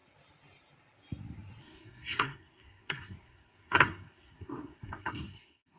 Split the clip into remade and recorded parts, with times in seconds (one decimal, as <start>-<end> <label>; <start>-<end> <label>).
0.0-1.6 recorded; 1.6-5.8 remade